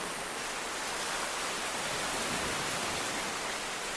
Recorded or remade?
recorded